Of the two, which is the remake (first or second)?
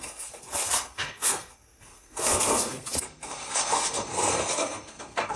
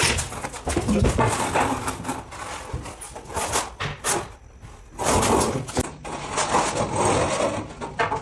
first